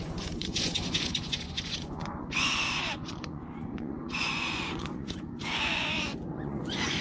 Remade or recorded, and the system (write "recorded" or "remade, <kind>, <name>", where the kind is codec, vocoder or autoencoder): remade, vocoder, Vocos